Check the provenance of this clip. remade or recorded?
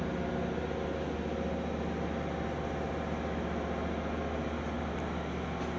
recorded